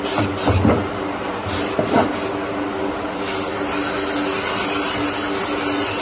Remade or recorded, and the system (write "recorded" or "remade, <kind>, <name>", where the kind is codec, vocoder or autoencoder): recorded